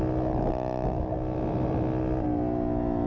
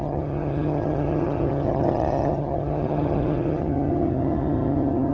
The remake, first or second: second